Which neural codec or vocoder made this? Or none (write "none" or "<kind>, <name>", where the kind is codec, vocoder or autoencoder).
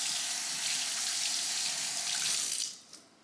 none